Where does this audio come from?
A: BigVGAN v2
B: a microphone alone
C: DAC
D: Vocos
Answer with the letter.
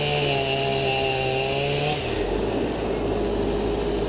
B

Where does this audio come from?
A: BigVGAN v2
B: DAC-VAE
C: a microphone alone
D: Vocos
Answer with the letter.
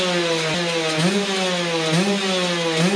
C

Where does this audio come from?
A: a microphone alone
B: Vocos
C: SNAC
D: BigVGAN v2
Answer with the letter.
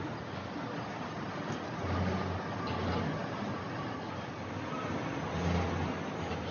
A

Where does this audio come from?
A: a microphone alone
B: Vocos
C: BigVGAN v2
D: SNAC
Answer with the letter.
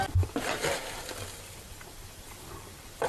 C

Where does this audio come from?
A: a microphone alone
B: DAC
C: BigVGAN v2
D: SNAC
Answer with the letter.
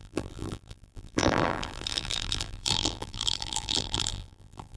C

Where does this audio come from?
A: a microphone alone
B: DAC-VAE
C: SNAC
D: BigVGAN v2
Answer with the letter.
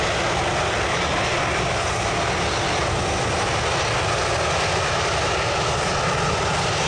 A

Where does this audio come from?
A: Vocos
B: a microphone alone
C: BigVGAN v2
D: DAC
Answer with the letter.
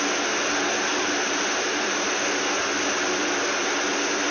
B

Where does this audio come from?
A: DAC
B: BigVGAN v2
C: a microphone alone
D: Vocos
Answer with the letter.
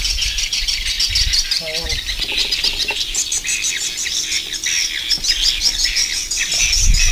C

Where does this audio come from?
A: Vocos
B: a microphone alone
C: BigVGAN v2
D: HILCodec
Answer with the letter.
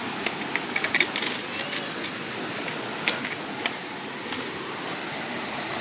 B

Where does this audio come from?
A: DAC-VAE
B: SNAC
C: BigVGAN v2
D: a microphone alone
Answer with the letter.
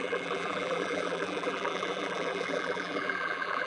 C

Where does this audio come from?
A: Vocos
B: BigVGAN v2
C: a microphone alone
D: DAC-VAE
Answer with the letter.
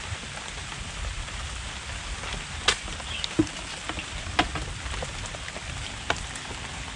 C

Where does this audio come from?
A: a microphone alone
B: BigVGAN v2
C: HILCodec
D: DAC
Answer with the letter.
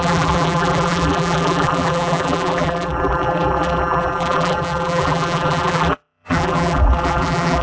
B